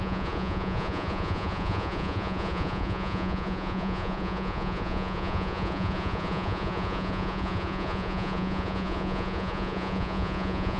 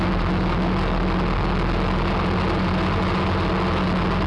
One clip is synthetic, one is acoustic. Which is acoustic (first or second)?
second